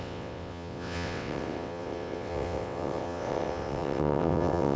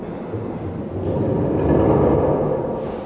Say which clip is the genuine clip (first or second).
second